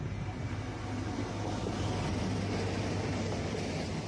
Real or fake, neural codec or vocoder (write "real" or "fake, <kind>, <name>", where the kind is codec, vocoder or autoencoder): real